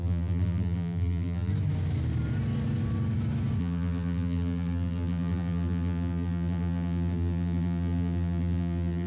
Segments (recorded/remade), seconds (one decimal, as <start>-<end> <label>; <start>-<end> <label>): 0.0-1.5 remade; 1.5-3.6 recorded; 3.6-9.1 remade